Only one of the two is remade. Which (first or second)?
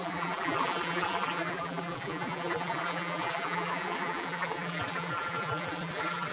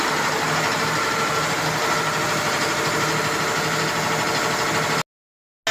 first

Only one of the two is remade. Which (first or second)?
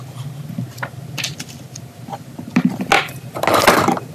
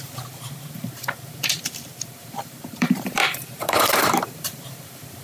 second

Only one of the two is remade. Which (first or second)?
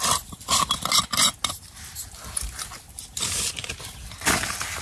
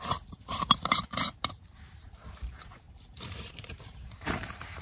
second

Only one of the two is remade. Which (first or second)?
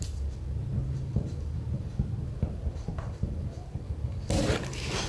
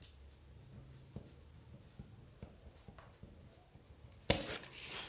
first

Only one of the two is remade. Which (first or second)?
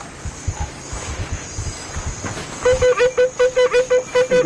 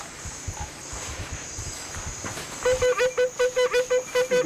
second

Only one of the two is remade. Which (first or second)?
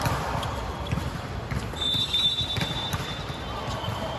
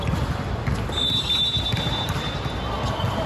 first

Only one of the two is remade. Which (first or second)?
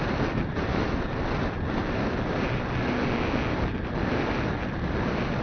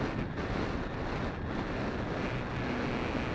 first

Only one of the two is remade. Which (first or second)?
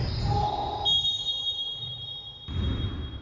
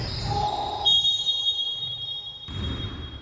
second